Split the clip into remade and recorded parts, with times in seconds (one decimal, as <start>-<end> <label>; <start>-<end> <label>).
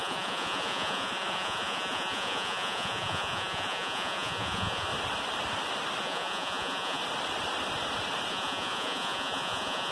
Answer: 0.0-4.9 remade; 4.9-6.0 recorded; 6.0-7.0 remade; 7.0-8.3 recorded; 8.3-9.9 remade